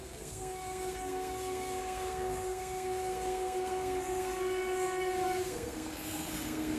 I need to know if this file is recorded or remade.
remade